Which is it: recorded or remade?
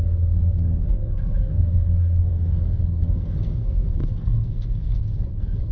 remade